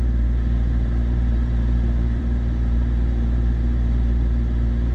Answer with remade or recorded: remade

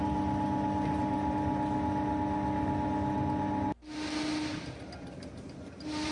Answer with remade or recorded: recorded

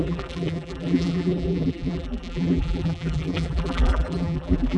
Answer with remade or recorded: remade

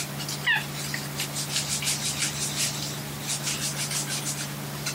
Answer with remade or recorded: recorded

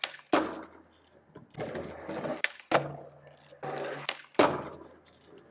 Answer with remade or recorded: recorded